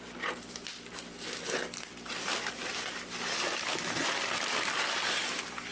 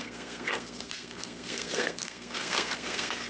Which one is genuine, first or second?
first